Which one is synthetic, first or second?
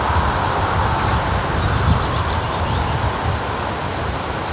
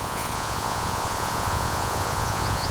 second